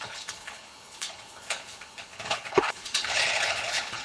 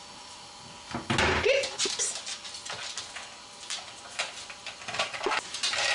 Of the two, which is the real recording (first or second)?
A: second